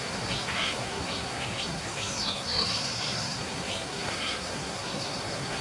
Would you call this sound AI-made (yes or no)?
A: yes